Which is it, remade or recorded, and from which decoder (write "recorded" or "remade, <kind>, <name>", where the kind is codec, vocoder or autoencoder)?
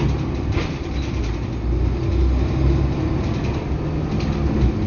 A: recorded